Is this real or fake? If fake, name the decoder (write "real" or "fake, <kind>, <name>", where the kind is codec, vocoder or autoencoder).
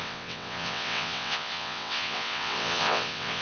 fake, vocoder, WaveNeXt